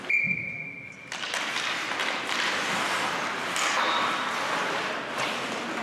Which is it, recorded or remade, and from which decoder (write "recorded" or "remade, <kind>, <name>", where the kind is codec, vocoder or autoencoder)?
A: recorded